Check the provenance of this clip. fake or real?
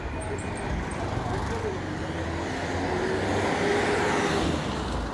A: real